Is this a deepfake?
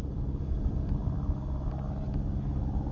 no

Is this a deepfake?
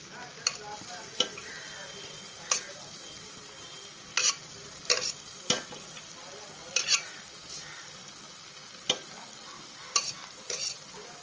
no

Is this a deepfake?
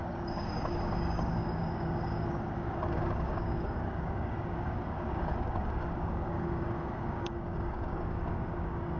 yes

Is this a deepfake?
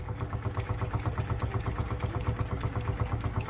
yes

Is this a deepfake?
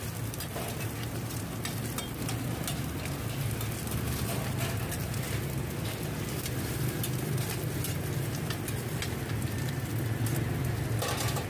no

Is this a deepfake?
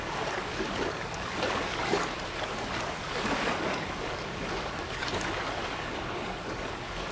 yes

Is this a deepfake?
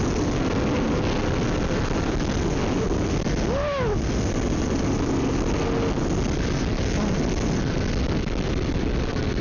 no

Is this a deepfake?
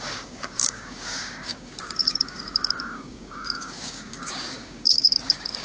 yes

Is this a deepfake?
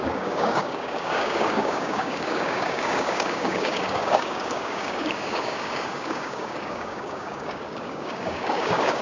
yes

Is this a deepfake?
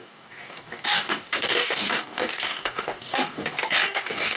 yes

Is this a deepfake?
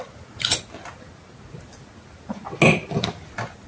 no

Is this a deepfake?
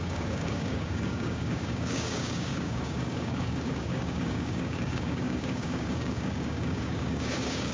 yes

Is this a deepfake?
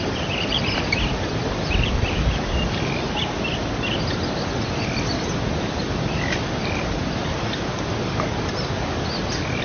no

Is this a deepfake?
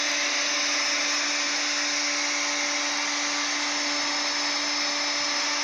no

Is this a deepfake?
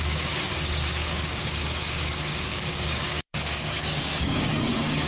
yes